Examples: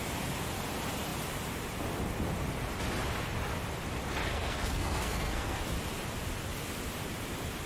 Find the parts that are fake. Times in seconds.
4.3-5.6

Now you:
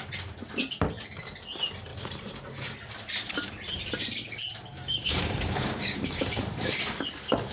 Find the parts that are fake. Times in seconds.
4.7-6.3